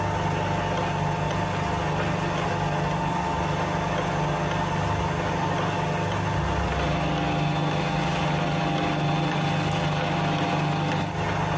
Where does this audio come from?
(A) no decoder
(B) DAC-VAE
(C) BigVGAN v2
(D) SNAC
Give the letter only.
A